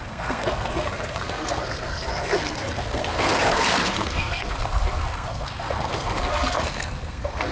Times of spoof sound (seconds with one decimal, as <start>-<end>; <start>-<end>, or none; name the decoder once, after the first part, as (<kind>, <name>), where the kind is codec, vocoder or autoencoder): 0.0-7.5 (codec, SNAC)